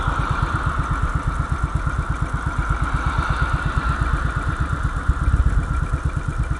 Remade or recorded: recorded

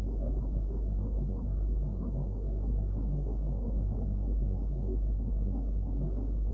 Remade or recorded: remade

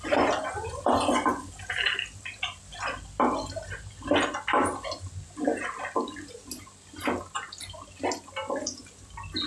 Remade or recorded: recorded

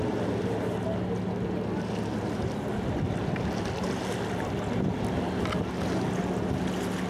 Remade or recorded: recorded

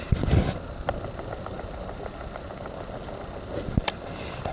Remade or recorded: recorded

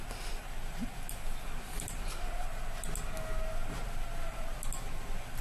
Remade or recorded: recorded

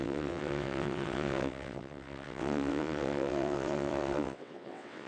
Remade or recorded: remade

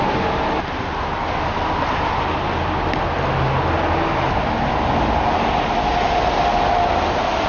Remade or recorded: recorded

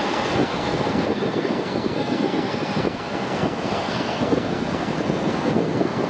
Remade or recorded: remade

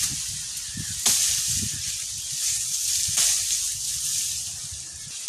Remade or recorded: recorded